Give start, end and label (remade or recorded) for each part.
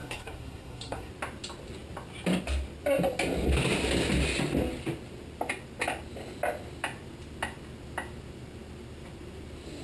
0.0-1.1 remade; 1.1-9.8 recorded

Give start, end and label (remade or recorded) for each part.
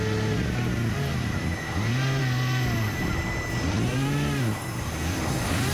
0.0-5.7 recorded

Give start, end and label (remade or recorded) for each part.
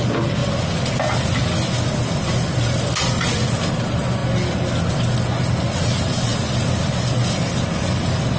0.0-8.4 recorded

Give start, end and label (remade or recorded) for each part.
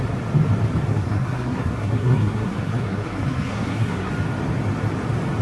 0.0-0.9 recorded; 0.9-4.1 remade; 4.1-5.4 recorded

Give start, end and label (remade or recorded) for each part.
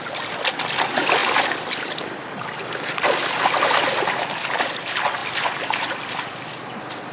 0.0-7.1 recorded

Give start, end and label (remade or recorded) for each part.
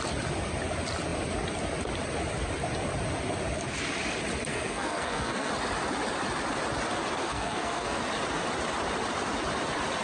0.0-4.5 recorded; 4.5-5.5 remade; 5.5-7.2 recorded; 7.2-8.0 remade; 8.0-10.0 recorded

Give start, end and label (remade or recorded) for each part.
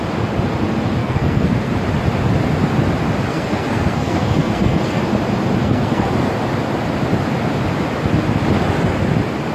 0.0-1.0 recorded; 1.0-1.7 remade; 1.7-3.3 recorded; 3.3-5.0 remade; 5.0-5.6 recorded; 5.6-6.1 remade; 6.1-9.5 recorded